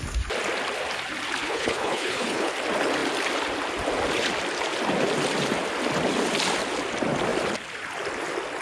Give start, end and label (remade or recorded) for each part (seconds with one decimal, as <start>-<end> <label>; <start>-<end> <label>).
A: 0.0-1.4 recorded; 1.4-2.5 remade; 2.5-8.6 recorded